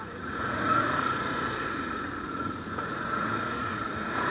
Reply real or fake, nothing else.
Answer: fake